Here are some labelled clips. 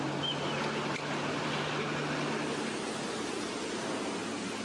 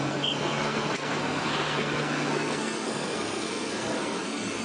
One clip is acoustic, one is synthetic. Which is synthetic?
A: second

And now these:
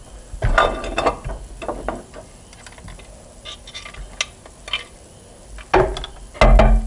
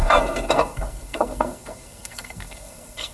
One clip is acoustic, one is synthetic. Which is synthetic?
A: second